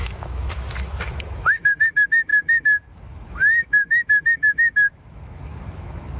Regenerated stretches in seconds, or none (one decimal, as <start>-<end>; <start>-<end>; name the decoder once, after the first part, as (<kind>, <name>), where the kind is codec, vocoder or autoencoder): 0.0-6.2 (autoencoder, DAC-VAE)